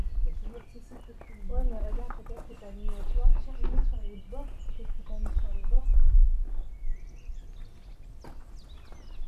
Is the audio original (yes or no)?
yes